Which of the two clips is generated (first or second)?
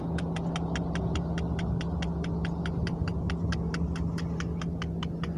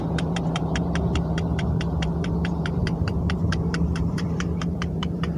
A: second